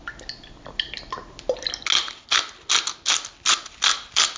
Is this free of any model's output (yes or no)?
yes